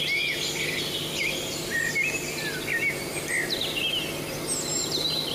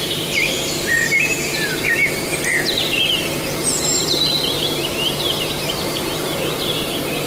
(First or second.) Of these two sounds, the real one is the first